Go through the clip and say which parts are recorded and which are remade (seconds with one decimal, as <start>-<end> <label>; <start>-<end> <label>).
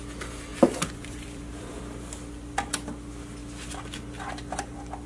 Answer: 0.0-0.5 recorded; 0.5-1.8 remade; 1.8-5.1 recorded